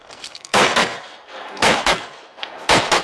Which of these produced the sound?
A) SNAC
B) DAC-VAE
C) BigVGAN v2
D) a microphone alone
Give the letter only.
A